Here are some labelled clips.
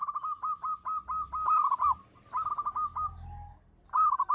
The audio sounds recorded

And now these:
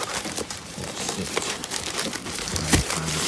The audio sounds remade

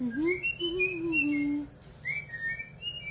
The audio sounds recorded